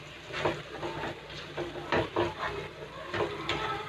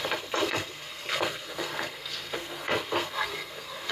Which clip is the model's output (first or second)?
second